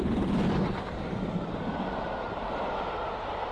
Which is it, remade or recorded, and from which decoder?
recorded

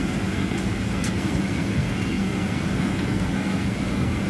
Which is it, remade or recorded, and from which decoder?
remade, codec, SNAC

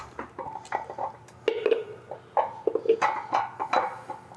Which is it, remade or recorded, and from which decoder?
recorded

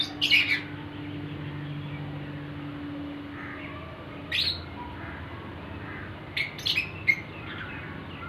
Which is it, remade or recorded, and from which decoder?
recorded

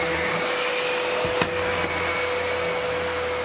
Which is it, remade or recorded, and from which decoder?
recorded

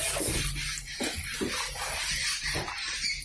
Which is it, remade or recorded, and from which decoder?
recorded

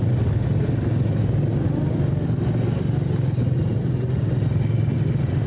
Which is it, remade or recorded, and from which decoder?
recorded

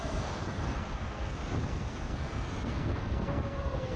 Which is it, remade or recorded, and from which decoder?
remade, codec, SNAC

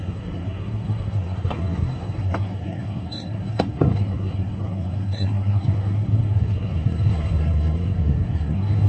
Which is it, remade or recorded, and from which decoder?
remade, codec, SNAC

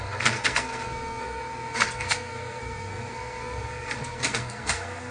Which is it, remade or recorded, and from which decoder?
remade, codec, SNAC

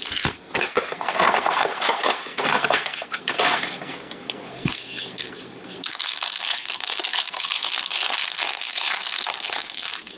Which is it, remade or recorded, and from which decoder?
remade, codec, SNAC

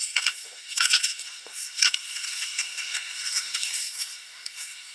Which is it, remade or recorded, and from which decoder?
remade, codec, SNAC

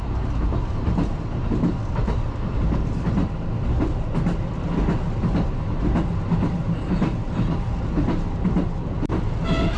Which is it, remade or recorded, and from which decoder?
recorded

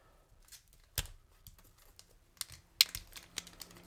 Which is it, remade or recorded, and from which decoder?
recorded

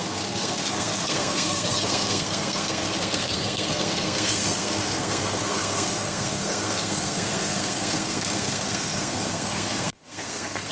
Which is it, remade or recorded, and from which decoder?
remade, codec, SNAC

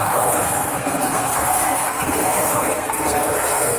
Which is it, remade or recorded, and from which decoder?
remade, codec, SNAC